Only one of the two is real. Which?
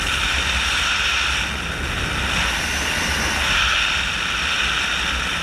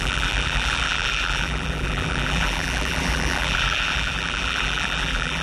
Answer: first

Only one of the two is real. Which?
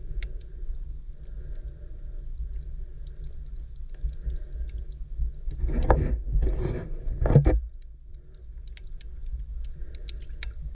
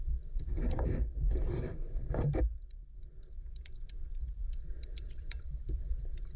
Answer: first